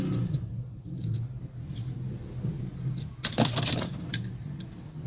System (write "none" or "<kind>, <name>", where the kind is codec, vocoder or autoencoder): none